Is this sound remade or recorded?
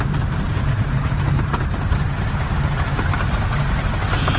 recorded